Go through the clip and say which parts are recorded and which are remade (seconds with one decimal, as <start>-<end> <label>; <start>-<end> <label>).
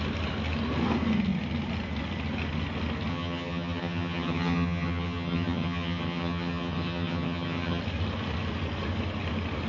0.0-3.1 recorded; 3.1-7.8 remade; 7.8-9.7 recorded